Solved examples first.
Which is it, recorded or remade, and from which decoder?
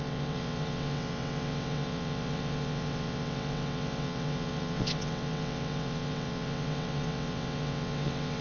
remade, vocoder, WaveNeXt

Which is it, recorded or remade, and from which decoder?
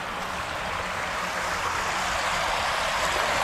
recorded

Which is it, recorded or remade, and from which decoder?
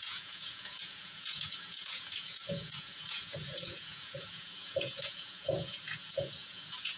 remade, vocoder, Vocos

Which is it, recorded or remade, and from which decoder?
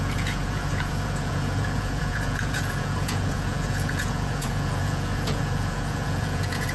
remade, vocoder, Vocos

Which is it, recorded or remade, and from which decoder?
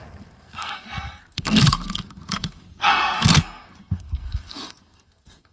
remade, codec, SNAC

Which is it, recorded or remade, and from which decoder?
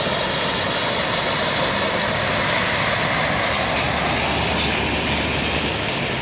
recorded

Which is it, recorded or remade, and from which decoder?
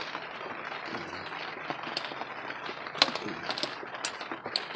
recorded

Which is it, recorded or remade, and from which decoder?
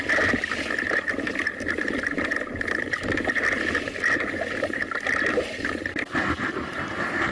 recorded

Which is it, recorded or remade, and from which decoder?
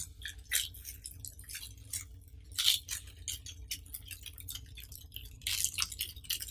recorded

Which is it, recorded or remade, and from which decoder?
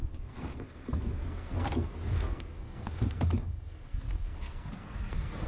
remade, codec, SNAC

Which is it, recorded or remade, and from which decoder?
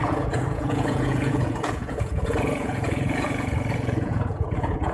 remade, vocoder, Vocos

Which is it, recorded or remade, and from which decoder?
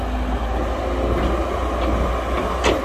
recorded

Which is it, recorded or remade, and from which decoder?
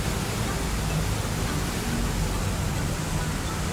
recorded